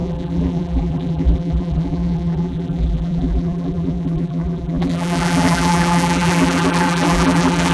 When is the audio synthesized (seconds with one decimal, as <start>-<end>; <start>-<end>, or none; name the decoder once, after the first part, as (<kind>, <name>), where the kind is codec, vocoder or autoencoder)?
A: 0.0-7.7 (vocoder, BigVGAN v2)